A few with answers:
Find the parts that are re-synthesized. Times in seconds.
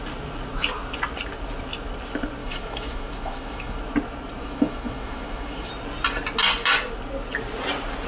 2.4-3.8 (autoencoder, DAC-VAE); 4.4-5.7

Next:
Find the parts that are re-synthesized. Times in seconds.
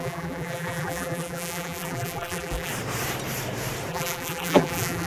0.0-2.7 (vocoder, BigVGAN v2); 3.9-5.1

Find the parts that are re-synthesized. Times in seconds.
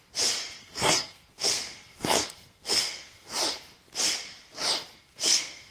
0.6-3.3 (codec, SNAC); 5.0-5.7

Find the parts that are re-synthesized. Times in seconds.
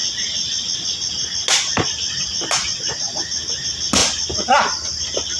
none